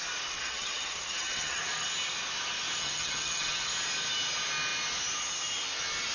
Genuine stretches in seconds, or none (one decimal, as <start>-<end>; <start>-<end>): 0.0-0.4; 1.6-2.8; 3.7-6.1